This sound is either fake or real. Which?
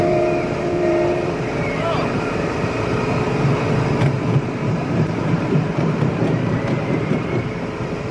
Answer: fake